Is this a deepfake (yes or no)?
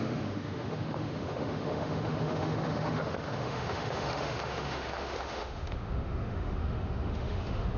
yes